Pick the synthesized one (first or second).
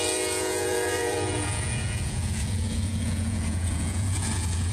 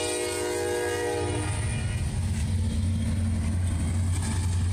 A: first